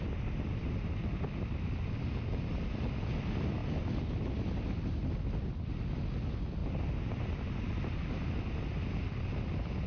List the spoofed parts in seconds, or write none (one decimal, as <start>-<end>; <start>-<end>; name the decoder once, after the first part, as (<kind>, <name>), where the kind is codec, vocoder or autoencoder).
none